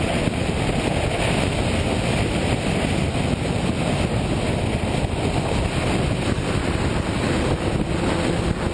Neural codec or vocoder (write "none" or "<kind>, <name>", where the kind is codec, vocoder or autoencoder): none